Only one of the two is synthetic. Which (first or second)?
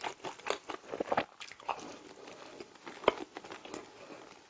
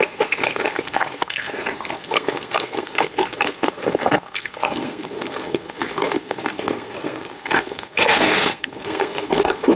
second